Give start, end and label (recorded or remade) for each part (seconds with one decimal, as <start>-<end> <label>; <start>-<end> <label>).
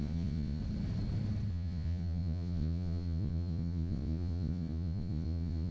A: 0.0-0.6 remade; 0.6-1.5 recorded; 1.5-5.7 remade